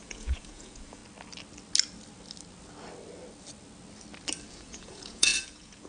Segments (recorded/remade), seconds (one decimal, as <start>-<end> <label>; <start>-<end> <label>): 0.0-1.0 remade; 1.0-4.5 recorded; 4.5-5.9 remade